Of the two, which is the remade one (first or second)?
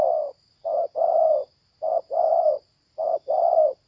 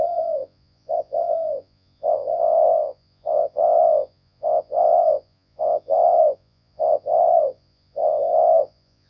second